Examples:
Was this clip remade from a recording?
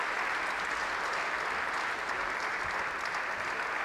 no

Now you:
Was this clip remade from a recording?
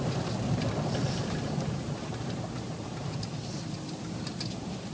no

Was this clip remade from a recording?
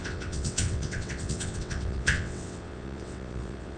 yes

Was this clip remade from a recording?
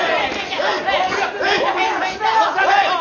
no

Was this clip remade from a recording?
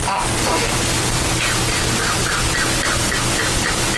yes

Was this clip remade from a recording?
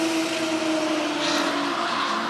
no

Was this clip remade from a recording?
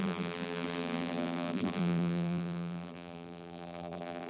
yes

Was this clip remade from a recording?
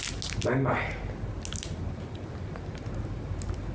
no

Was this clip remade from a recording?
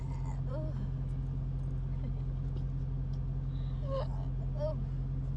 no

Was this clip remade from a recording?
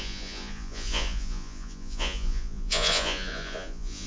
yes